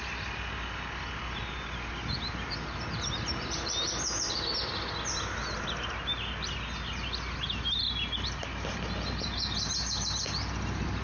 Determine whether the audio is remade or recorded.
recorded